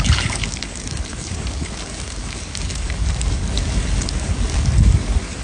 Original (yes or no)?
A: no